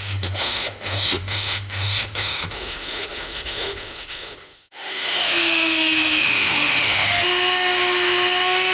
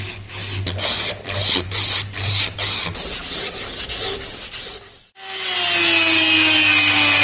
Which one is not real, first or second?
first